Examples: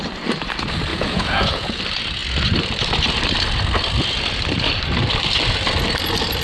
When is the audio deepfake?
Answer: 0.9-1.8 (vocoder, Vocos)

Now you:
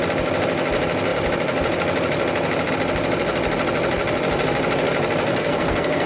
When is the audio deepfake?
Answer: 5.3-6.1 (codec, SNAC)